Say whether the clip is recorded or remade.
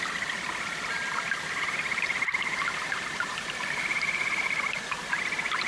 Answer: recorded